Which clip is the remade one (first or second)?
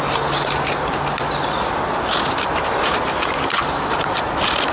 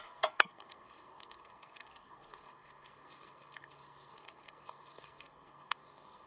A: second